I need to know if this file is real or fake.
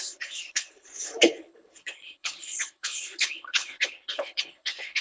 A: fake